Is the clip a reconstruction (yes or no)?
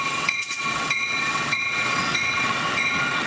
yes